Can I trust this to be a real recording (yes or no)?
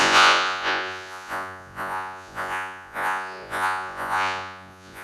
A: no